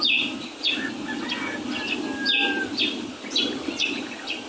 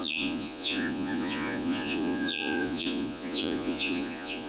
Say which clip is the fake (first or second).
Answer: second